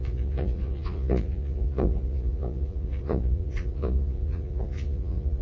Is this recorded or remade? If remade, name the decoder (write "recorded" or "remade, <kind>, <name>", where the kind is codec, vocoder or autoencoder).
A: remade, vocoder, Vocos